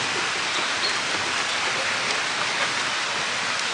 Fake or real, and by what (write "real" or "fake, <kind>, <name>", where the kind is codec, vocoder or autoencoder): real